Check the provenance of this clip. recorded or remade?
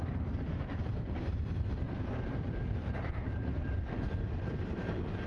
remade